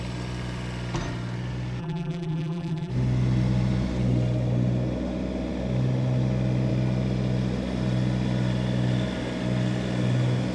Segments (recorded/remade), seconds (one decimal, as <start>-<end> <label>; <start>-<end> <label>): 0.0-1.8 recorded; 1.8-2.9 remade; 2.9-10.5 recorded